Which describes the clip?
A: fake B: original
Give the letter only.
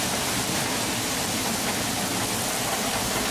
B